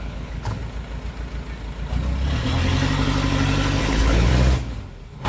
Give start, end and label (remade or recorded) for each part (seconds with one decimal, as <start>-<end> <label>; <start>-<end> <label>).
0.0-0.6 remade; 0.6-3.8 recorded; 3.8-4.3 remade; 4.3-5.3 recorded